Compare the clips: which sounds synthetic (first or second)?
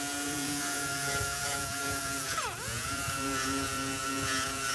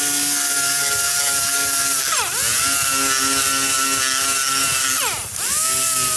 first